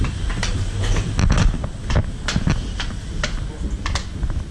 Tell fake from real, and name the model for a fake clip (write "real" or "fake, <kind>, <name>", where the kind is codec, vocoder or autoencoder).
real